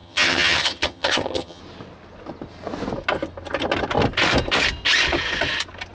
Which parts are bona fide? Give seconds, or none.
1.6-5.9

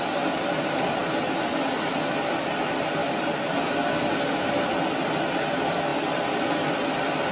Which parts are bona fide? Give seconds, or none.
0.0-7.3